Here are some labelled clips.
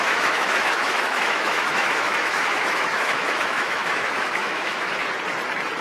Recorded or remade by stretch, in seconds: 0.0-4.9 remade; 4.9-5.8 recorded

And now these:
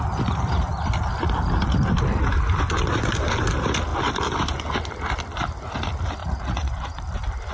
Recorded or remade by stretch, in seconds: 0.0-6.2 recorded; 6.2-7.0 remade; 7.0-7.5 recorded

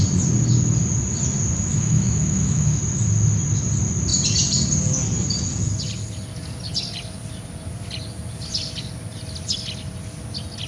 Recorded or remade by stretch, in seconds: 0.0-1.7 recorded; 1.7-2.8 remade; 2.8-10.7 recorded

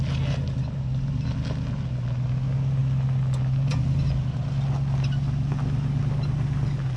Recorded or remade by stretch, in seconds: 0.0-7.0 recorded